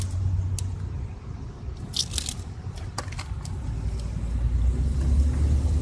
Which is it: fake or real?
real